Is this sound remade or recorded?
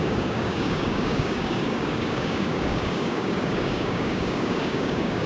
remade